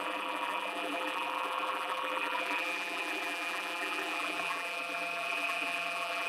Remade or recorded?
remade